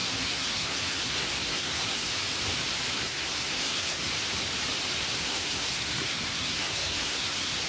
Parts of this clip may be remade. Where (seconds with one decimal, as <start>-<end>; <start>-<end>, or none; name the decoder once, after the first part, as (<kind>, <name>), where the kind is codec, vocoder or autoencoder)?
0.0-2.1 (codec, SNAC); 2.9-4.1; 5.2-7.7